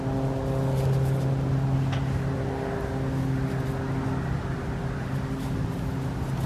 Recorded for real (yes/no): yes